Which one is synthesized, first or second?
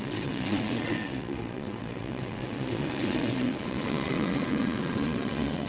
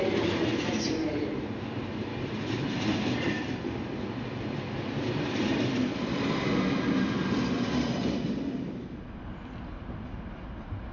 first